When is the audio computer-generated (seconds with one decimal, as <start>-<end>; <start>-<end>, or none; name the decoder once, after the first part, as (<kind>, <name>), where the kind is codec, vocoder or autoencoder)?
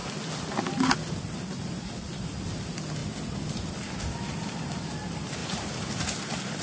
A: none